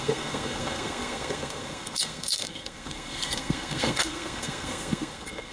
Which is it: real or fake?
fake